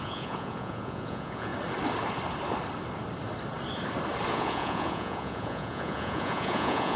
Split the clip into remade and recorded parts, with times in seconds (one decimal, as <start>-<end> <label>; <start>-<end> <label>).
0.0-1.5 remade; 1.5-4.3 recorded; 4.3-7.0 remade